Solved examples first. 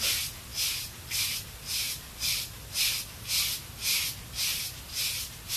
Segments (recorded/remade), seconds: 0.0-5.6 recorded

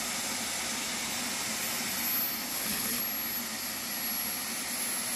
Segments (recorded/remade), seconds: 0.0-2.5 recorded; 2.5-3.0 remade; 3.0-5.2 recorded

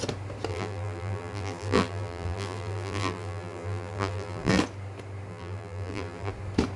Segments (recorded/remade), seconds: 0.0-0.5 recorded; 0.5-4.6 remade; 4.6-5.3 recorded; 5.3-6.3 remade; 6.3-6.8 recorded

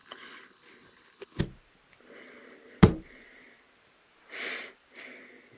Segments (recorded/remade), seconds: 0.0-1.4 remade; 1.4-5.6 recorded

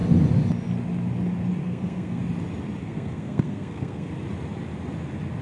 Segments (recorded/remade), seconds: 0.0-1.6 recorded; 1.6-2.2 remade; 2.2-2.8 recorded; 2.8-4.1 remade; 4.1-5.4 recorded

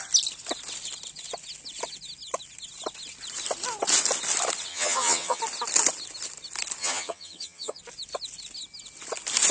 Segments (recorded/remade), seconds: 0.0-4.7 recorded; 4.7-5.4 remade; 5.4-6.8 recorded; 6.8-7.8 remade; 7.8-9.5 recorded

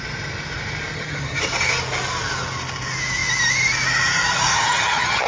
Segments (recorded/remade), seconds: 0.0-0.9 recorded; 0.9-1.4 remade; 1.4-4.5 recorded; 4.5-5.3 remade

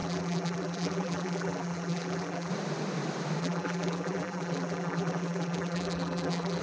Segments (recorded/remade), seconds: 0.0-2.5 remade; 2.5-3.4 recorded; 3.4-6.6 remade